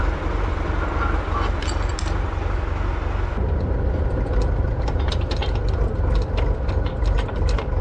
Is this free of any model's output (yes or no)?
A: yes